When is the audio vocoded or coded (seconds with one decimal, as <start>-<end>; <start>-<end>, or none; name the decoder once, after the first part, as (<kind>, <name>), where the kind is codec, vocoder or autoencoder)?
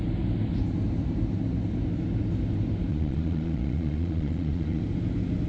2.9-4.8 (vocoder, Vocos)